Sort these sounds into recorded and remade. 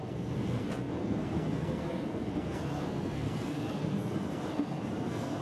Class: remade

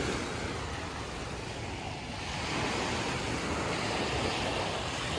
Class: recorded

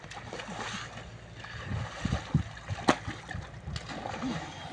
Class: recorded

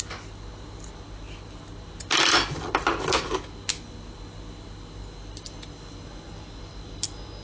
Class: recorded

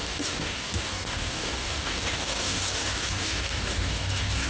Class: remade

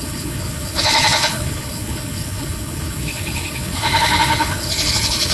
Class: remade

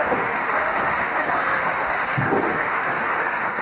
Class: remade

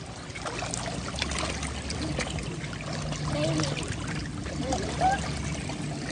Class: recorded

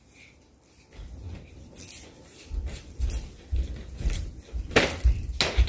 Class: recorded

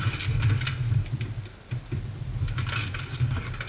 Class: recorded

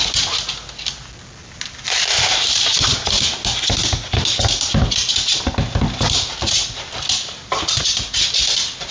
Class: recorded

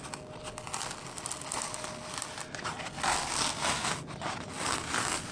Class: recorded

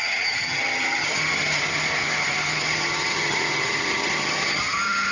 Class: remade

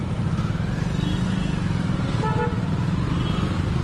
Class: recorded